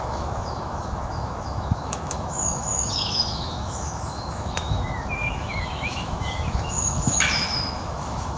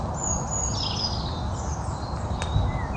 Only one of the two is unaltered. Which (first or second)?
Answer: second